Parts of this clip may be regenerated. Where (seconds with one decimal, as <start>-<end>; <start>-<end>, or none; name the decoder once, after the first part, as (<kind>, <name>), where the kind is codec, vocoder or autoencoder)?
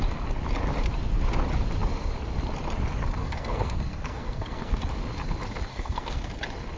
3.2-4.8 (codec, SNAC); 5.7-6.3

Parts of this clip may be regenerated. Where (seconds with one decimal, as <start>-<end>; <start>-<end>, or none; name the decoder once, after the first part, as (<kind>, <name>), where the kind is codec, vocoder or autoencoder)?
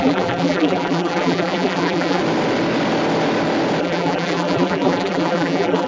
0.0-2.2 (vocoder, BigVGAN v2); 3.8-5.9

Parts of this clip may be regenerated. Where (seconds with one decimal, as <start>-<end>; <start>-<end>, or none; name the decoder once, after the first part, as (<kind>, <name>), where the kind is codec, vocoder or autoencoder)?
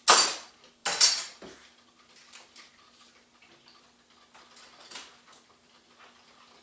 none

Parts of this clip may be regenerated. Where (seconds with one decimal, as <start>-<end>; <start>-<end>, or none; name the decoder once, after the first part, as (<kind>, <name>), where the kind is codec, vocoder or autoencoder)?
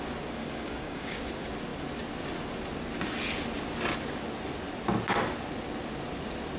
0.4-1.2 (codec, DAC)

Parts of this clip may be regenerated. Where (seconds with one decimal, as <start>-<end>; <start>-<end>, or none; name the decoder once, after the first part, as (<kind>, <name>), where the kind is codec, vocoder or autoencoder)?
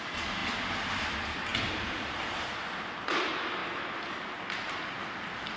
none